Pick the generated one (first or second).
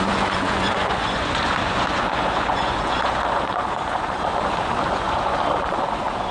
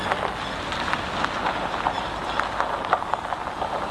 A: first